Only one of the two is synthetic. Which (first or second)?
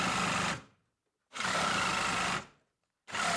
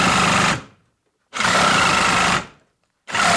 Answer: second